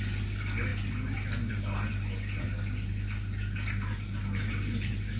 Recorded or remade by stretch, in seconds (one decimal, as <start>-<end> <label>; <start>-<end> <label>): 0.0-5.2 recorded